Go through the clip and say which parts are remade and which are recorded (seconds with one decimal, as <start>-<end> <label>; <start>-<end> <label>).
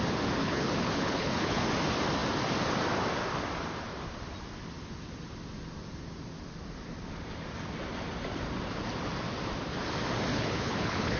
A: 0.0-0.4 recorded; 0.4-1.6 remade; 1.6-10.3 recorded; 10.3-11.2 remade